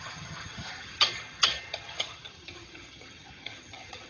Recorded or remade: remade